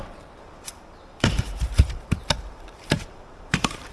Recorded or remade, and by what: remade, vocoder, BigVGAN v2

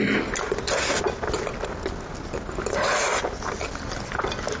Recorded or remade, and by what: recorded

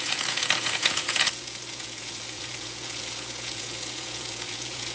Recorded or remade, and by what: remade, vocoder, Vocos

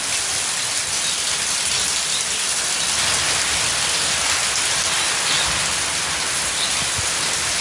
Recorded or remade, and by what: recorded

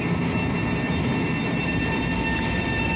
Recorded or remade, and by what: recorded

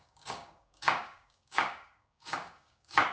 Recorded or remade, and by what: remade, codec, DAC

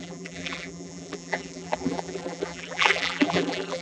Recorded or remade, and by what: remade, vocoder, BigVGAN v2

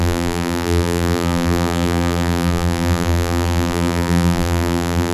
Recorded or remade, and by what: remade, vocoder, BigVGAN v2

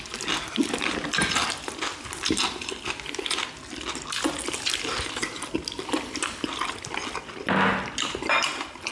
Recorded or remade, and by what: recorded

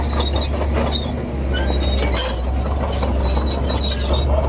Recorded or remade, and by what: recorded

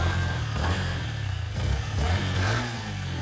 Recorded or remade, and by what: remade, codec, SNAC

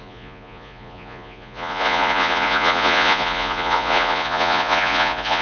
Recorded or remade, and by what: remade, vocoder, Vocos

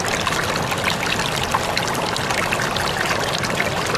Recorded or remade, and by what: recorded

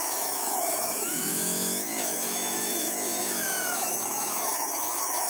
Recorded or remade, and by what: remade, autoencoder, DAC-VAE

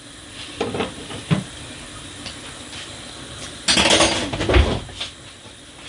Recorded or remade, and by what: recorded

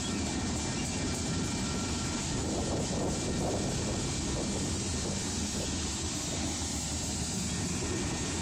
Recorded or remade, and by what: recorded